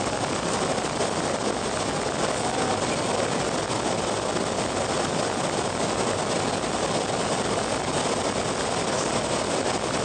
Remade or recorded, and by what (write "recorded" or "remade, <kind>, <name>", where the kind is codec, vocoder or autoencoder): recorded